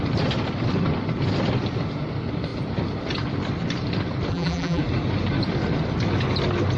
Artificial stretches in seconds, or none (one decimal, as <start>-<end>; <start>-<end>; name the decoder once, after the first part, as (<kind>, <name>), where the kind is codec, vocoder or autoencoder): 4.3-4.8 (vocoder, BigVGAN v2)